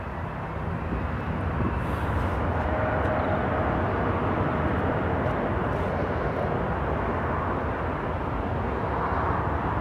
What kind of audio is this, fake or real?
real